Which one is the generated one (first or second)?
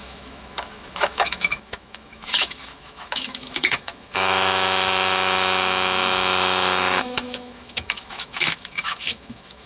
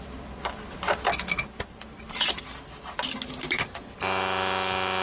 first